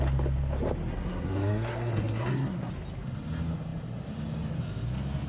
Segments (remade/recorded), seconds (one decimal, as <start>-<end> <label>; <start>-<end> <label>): 0.0-0.9 recorded; 0.9-2.7 remade; 2.7-5.3 recorded

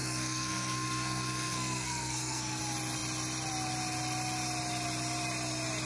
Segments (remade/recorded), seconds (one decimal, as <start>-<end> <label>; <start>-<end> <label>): 0.0-2.6 remade; 2.6-5.9 recorded